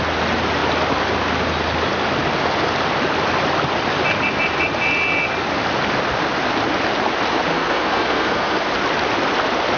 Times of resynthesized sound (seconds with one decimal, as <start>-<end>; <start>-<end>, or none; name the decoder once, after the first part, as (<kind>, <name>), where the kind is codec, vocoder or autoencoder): 7.5-8.7 (codec, SNAC)